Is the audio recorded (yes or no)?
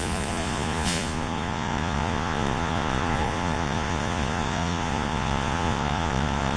no